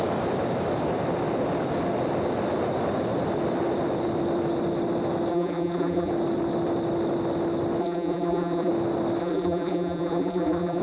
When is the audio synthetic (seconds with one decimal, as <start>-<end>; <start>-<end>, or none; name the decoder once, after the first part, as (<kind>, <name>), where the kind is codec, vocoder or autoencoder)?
5.3-6.1 (vocoder, BigVGAN v2); 7.8-8.7; 9.2-10.8